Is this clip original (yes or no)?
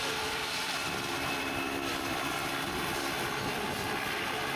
no